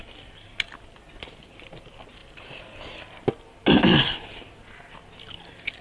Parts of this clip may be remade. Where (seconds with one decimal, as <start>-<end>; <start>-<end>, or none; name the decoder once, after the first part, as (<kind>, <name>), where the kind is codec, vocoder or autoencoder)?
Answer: none